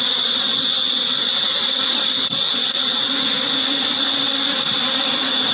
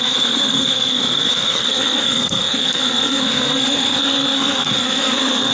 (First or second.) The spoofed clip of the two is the second